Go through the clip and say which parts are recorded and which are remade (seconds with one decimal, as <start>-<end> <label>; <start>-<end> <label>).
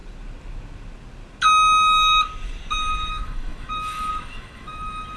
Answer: 0.0-3.1 recorded; 3.1-5.2 remade